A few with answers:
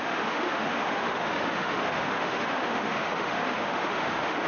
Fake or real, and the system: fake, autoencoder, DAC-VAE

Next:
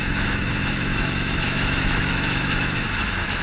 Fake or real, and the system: fake, autoencoder, DAC-VAE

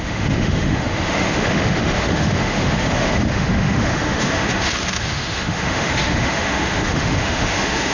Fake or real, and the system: fake, autoencoder, DAC-VAE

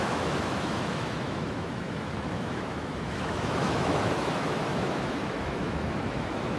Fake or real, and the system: fake, autoencoder, DAC-VAE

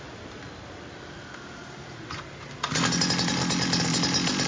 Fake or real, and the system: real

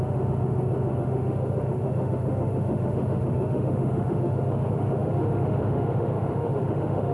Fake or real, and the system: fake, autoencoder, DAC-VAE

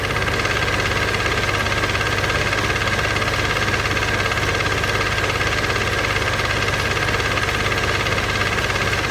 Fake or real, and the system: real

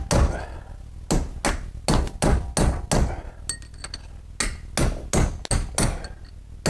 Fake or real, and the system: real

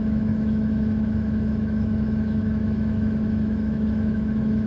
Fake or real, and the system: fake, autoencoder, DAC-VAE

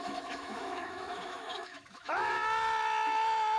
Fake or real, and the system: fake, autoencoder, DAC-VAE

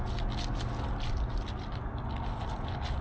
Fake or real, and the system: real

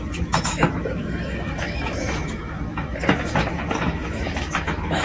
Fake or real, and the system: fake, autoencoder, DAC-VAE